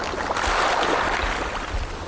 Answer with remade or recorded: recorded